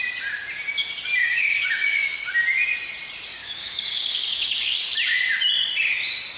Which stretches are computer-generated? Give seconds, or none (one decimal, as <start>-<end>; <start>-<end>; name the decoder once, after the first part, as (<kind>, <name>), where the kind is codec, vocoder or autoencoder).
1.2-2.3 (codec, DAC); 3.3-4.8